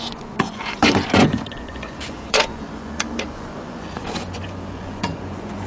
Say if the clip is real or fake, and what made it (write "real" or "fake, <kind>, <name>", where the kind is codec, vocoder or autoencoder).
fake, vocoder, Vocos